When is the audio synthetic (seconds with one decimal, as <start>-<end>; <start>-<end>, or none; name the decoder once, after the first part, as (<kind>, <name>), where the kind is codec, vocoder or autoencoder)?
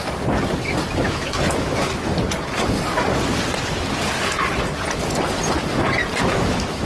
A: 1.1-2.1 (autoencoder, DAC-VAE); 6.2-6.9